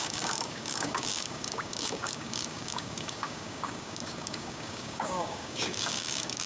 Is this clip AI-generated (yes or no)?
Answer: yes